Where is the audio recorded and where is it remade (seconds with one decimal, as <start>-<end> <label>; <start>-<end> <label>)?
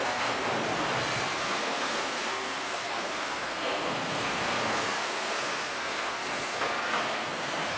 0.0-0.4 remade; 0.4-1.3 recorded; 1.3-7.8 remade